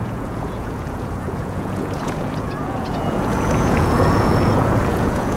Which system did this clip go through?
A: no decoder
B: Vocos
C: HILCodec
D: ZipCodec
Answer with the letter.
B